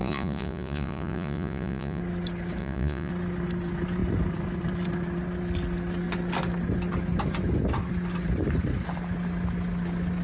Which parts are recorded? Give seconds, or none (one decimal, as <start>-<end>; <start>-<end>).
2.0-2.6; 3.1-10.2